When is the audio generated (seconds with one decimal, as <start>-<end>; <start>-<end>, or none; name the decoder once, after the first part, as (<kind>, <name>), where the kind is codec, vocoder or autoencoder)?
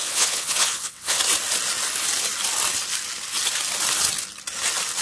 0.0-1.2 (vocoder, WaveNeXt)